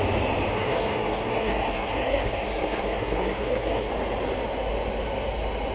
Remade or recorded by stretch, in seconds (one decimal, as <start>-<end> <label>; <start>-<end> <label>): 0.0-0.5 recorded; 0.5-3.9 remade; 3.9-5.7 recorded